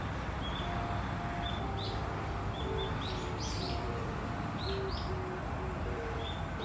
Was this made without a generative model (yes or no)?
yes